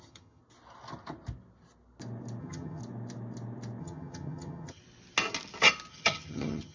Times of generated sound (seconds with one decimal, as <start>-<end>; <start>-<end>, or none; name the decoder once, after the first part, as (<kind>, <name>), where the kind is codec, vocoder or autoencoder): 0.0-0.4 (vocoder, HiFi-GAN); 2.4-2.8; 3.8-4.8; 5.9-6.7